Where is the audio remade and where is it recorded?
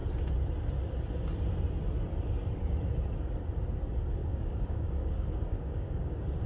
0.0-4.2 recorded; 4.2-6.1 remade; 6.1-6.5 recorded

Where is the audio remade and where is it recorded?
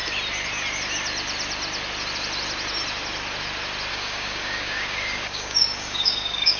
0.0-3.9 recorded; 3.9-6.6 remade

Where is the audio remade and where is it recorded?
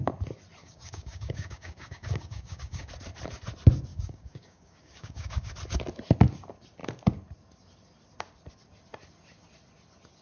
0.0-0.6 recorded; 0.6-2.9 remade; 2.9-3.9 recorded; 3.9-5.5 remade; 5.5-10.2 recorded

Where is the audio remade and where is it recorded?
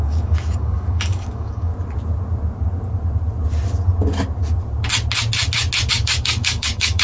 0.0-1.7 remade; 1.7-5.9 recorded; 5.9-7.0 remade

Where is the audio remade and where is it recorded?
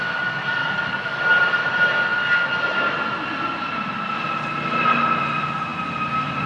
0.0-0.6 recorded; 0.6-1.2 remade; 1.2-6.5 recorded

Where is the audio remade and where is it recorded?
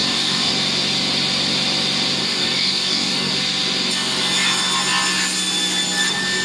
0.0-0.5 remade; 0.5-2.2 recorded; 2.2-3.3 remade; 3.3-6.4 recorded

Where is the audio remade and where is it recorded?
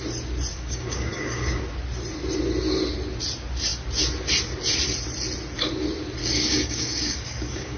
0.0-0.5 recorded; 0.5-1.6 remade; 1.6-6.2 recorded; 6.2-7.8 remade